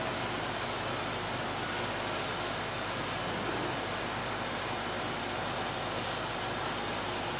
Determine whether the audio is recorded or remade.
recorded